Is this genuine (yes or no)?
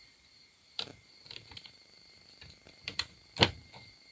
no